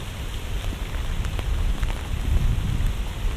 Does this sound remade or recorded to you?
remade